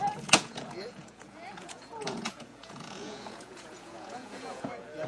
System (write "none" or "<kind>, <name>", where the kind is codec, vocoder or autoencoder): vocoder, Vocos